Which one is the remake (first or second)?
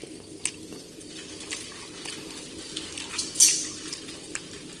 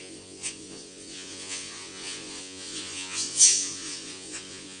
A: second